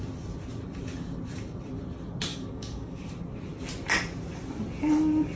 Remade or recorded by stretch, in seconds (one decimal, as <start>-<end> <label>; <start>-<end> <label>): 0.0-2.3 recorded; 2.3-3.1 remade; 3.1-5.4 recorded